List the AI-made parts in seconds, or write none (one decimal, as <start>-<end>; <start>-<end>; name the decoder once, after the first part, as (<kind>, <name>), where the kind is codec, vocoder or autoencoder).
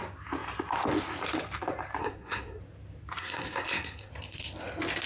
2.0-2.6 (codec, SNAC); 3.2-4.1